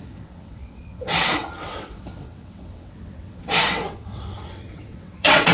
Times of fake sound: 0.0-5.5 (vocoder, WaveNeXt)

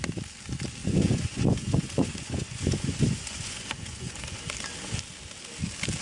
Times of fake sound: 0.8-4.4 (vocoder, Vocos)

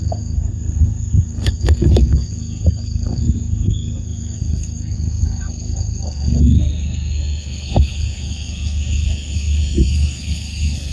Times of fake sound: 0.0-10.9 (codec, SNAC)

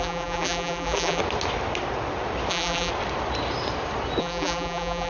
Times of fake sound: 0.0-1.2 (vocoder, BigVGAN v2); 2.5-2.9; 4.2-5.1